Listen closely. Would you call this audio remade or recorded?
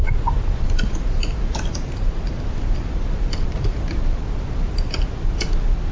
recorded